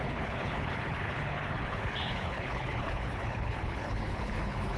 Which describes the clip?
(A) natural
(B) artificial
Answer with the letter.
B